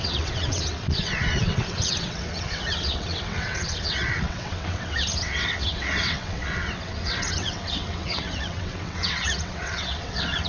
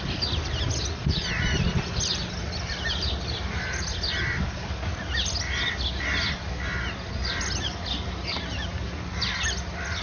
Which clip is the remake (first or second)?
first